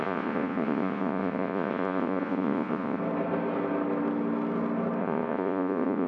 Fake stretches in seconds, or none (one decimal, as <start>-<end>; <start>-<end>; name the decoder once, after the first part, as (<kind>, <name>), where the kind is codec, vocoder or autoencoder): 0.0-3.0 (vocoder, Vocos); 5.0-6.1